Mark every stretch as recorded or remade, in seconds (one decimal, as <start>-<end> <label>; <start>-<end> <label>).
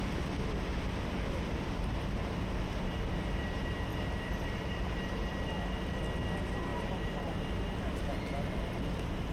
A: 0.0-3.9 recorded; 3.9-5.3 remade; 5.3-6.7 recorded; 6.7-7.4 remade; 7.4-9.3 recorded